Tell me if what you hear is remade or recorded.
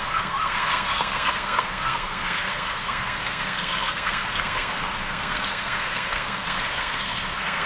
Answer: remade